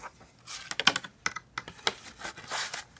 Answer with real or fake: real